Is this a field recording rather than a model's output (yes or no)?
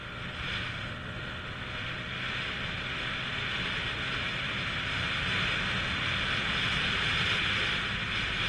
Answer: yes